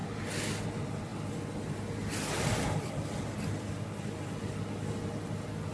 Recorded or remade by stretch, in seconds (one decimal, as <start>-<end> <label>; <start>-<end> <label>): 0.0-5.7 recorded